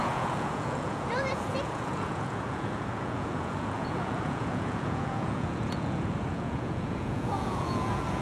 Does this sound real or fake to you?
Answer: fake